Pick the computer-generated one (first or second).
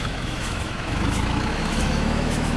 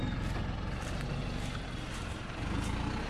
first